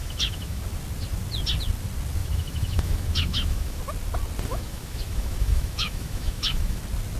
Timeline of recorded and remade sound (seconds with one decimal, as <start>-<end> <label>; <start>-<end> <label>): 0.0-0.6 remade; 0.6-2.2 recorded; 2.2-3.8 remade; 3.8-4.5 recorded; 4.5-6.8 remade; 6.8-7.2 recorded